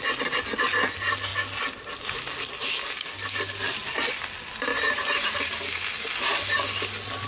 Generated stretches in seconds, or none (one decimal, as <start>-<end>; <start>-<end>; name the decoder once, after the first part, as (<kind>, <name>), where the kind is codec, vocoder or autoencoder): 4.7-5.6 (vocoder, BigVGAN v2)